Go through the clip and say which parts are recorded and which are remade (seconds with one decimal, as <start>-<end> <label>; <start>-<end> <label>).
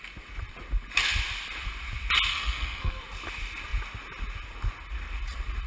0.0-2.3 recorded; 2.3-3.0 remade; 3.0-5.7 recorded